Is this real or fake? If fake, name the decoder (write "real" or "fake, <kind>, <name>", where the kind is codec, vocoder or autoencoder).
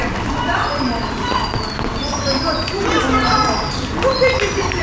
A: real